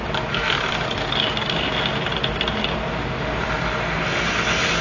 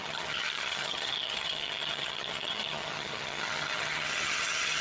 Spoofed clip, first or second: second